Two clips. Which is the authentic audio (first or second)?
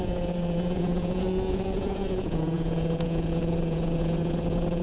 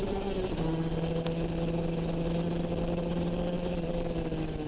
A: second